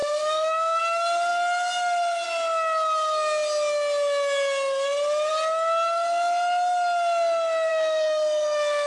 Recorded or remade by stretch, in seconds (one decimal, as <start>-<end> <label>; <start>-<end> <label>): 0.0-0.8 remade; 0.8-7.7 recorded; 7.7-8.9 remade